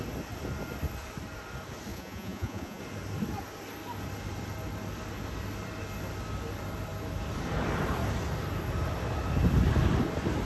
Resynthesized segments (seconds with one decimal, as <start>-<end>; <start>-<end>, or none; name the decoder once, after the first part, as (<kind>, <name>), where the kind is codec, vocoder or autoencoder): 1.9-2.8 (vocoder, Vocos)